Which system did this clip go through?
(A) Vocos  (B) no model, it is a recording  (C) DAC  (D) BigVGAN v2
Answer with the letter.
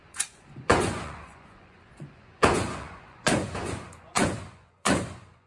A